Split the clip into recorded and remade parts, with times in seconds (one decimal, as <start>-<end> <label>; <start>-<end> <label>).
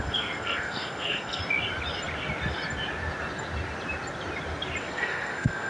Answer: 0.0-1.4 remade; 1.4-4.8 recorded; 4.8-5.7 remade